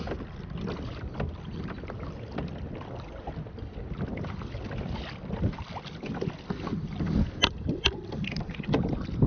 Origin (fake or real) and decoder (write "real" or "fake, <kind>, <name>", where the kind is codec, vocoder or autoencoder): real